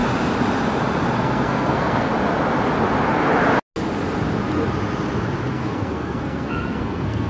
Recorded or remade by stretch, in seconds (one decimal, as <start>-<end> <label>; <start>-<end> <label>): 0.0-1.2 recorded; 1.2-2.1 remade; 2.1-5.5 recorded; 5.5-7.3 remade